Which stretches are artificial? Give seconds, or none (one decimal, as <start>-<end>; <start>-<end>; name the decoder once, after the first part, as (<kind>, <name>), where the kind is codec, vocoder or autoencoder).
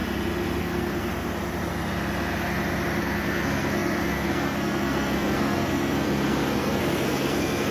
0.6-1.1 (codec, SNAC); 3.0-7.7